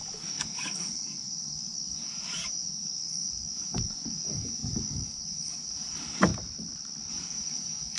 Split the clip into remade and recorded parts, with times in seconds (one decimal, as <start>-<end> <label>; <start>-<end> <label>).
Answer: 0.0-6.3 remade; 6.3-7.1 recorded; 7.1-8.0 remade